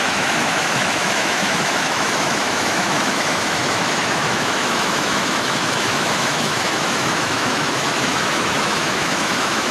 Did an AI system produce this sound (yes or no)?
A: yes